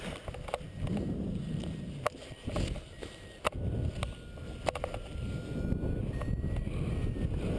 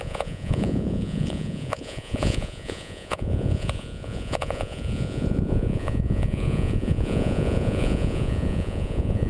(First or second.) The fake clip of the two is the second